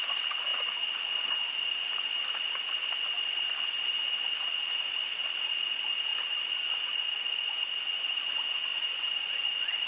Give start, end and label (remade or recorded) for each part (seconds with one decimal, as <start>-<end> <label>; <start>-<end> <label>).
0.0-9.9 recorded